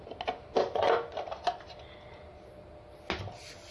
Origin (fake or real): real